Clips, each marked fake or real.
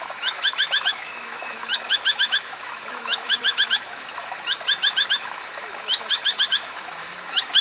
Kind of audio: fake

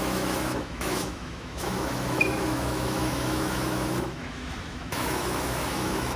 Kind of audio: fake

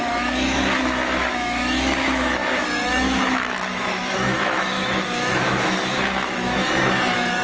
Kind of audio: fake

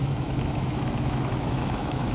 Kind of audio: fake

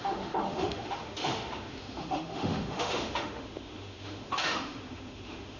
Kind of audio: fake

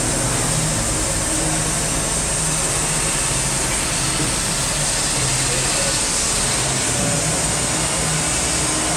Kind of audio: real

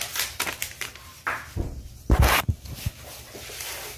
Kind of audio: real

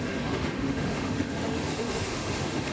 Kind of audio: fake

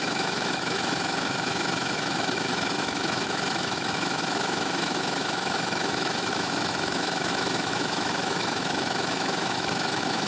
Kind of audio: fake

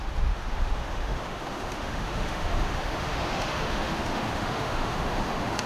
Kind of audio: fake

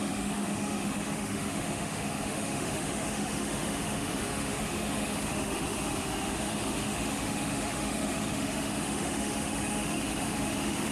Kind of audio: fake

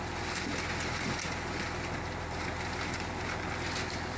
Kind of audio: real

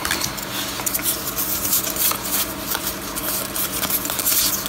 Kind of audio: real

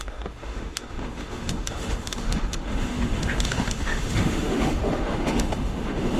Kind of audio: fake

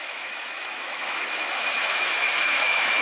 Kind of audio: fake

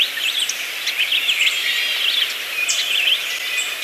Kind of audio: real